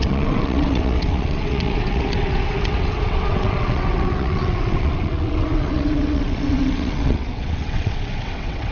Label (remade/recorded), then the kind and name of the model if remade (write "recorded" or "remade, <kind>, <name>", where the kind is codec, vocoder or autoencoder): remade, vocoder, WaveNeXt